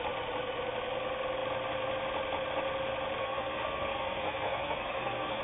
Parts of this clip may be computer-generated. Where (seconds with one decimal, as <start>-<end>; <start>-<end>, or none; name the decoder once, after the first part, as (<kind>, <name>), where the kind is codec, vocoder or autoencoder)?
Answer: 3.2-5.4 (codec, SNAC)